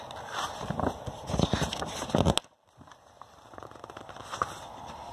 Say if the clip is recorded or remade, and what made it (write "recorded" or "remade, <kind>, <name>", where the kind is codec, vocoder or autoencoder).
recorded